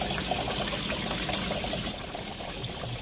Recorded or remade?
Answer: recorded